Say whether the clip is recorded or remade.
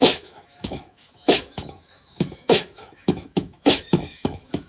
remade